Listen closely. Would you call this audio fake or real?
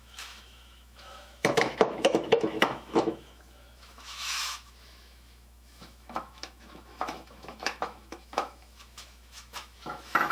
fake